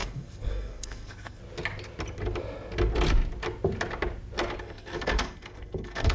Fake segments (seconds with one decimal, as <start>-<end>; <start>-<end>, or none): 0.0-1.4; 4.6-6.1